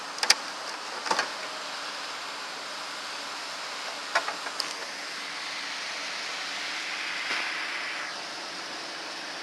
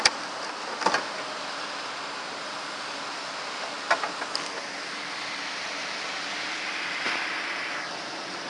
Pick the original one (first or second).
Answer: first